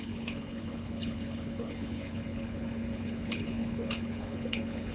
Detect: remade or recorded remade